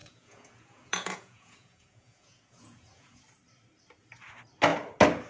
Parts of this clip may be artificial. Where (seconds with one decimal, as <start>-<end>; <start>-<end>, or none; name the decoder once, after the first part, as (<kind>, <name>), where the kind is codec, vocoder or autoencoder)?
0.0-3.2 (vocoder, Vocos)

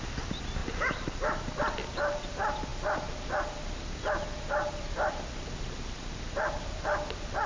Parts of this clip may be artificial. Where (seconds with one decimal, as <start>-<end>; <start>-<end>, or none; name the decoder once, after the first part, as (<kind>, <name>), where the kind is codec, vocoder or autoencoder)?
0.6-1.4 (vocoder, BigVGAN v2)

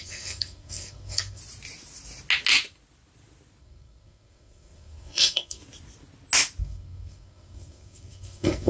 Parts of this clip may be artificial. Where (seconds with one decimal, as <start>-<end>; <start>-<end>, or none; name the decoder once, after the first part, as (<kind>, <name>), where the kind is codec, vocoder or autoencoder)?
0.0-1.4 (codec, SNAC); 3.6-5.6; 6.6-8.7

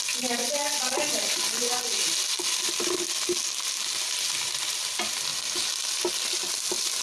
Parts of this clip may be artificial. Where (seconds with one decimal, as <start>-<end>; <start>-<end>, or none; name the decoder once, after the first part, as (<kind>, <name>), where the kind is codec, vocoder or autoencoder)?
none

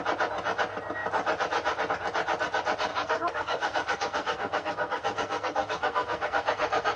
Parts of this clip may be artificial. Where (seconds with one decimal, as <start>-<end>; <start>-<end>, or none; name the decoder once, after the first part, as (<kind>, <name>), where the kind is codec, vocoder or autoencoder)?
2.9-7.0 (codec, SNAC)

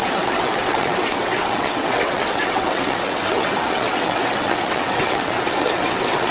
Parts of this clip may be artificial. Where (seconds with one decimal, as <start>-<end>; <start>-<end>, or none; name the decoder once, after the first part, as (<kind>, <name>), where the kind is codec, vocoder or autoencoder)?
0.0-6.3 (vocoder, WaveNeXt)

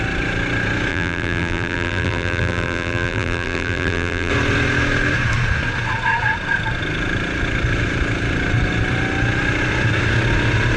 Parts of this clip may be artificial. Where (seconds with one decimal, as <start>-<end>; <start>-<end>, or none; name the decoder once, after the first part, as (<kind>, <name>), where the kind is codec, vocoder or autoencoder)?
0.9-4.3 (vocoder, BigVGAN v2)